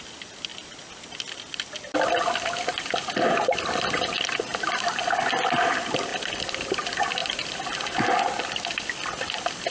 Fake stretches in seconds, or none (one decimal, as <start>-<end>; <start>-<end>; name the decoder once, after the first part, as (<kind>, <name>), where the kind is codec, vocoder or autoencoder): 6.1-6.7 (vocoder, BigVGAN v2); 7.2-8.8